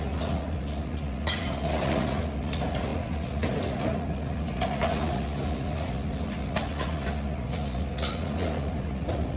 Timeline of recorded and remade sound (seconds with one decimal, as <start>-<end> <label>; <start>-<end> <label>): 0.0-9.4 remade